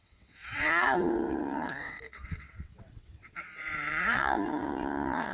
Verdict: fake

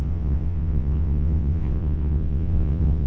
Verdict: fake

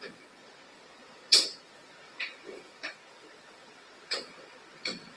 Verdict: fake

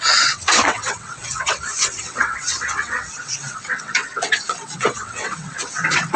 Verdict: fake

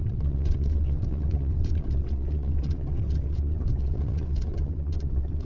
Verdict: fake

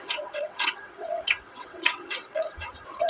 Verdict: fake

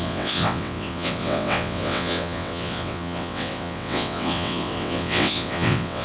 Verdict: fake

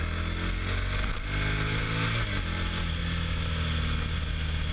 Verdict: real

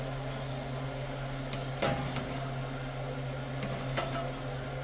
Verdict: real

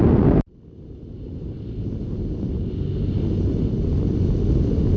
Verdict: real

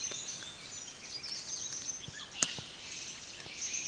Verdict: real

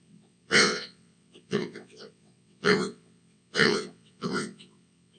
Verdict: fake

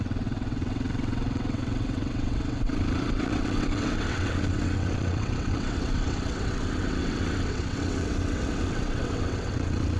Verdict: fake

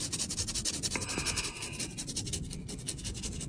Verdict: real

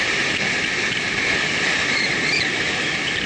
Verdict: real